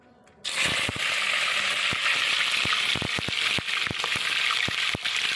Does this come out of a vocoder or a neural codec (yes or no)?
no